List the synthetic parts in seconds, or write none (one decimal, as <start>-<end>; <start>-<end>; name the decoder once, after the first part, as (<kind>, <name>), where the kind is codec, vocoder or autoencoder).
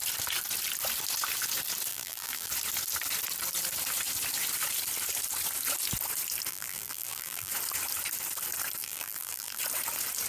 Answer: 1.9-2.5 (vocoder, BigVGAN v2); 6.5-7.5; 8.8-9.6